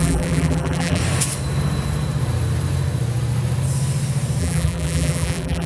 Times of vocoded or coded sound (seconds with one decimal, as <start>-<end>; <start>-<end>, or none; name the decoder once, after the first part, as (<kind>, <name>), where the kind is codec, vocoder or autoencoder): 0.0-1.0 (vocoder, BigVGAN v2); 4.4-5.7